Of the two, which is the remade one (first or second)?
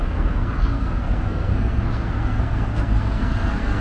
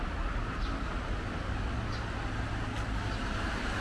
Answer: first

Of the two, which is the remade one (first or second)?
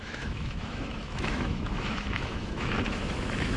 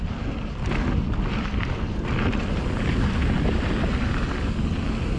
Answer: first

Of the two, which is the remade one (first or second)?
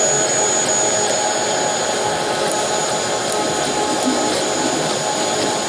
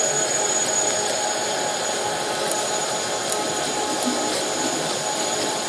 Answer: second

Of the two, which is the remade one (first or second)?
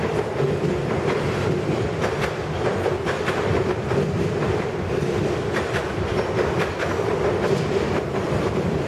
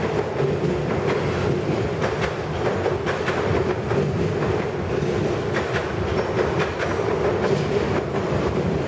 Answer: first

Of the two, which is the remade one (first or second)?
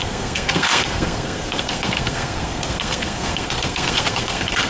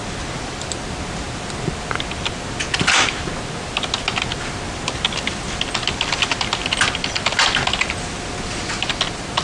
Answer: first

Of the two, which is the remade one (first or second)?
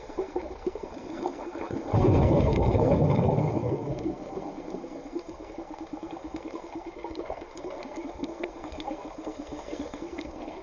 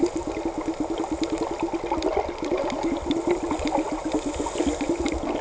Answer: first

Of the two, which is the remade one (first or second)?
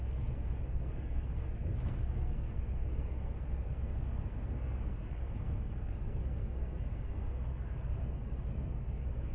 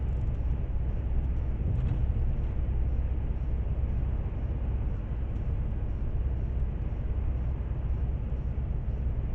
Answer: first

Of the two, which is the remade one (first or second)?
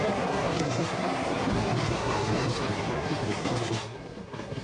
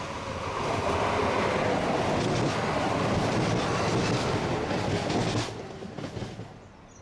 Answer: first